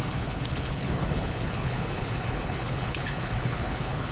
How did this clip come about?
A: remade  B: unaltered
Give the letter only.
A